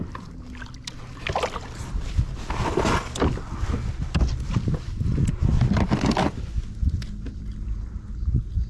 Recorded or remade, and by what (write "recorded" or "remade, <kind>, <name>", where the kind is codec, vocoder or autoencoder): recorded